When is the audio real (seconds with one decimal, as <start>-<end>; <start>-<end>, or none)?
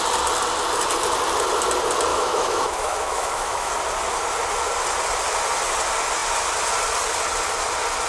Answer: 0.0-2.1; 3.7-8.1